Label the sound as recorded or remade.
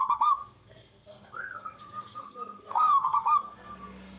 remade